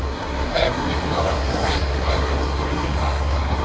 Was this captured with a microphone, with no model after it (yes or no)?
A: no